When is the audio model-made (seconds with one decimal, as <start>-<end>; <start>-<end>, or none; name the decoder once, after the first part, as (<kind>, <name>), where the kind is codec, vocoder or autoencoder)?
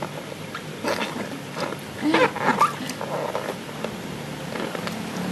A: none